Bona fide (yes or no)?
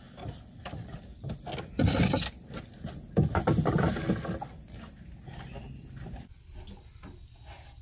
yes